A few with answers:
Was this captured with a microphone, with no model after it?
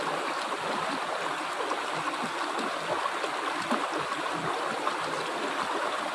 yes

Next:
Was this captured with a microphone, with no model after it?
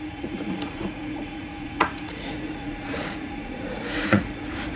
no